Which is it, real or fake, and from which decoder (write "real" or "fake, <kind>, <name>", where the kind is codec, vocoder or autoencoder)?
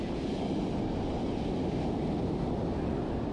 real